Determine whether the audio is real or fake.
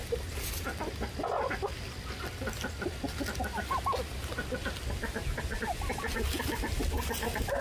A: real